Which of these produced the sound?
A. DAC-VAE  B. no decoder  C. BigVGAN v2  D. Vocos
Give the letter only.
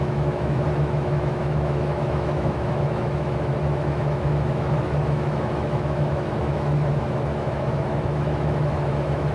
A